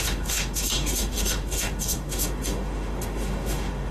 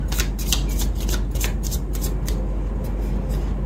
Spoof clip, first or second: first